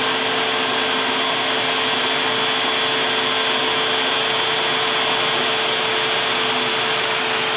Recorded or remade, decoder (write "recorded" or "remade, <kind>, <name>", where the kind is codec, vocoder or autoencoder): recorded